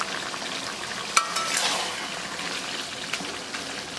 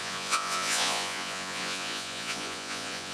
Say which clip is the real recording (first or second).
first